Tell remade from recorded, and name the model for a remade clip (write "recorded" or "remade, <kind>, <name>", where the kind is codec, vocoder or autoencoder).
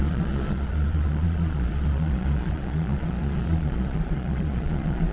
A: remade, vocoder, Vocos